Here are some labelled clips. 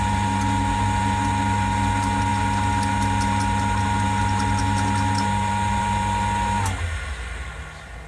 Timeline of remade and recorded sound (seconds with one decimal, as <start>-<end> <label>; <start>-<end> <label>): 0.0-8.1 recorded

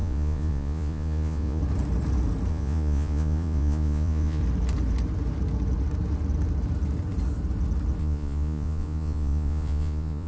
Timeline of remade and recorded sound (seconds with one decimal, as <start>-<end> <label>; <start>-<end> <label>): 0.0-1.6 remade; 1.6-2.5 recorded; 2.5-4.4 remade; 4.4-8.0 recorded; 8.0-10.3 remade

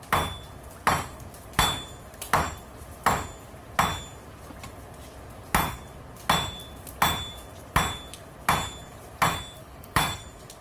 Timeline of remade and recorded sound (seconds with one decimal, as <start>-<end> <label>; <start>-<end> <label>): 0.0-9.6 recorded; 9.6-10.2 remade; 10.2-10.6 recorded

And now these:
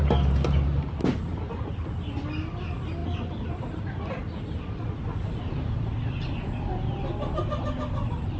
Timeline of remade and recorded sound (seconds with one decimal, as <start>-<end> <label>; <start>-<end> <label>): 0.0-8.4 recorded